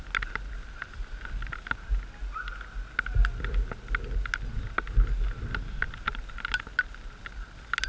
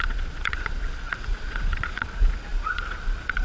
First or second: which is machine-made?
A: second